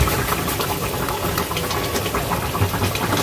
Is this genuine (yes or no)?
yes